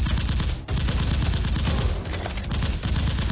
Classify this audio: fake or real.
real